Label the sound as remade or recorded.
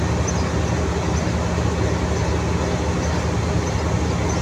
recorded